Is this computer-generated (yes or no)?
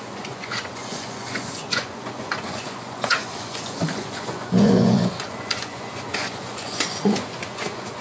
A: yes